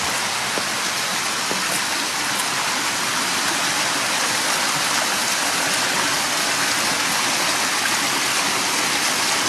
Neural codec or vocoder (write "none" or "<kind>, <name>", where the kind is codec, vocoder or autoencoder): none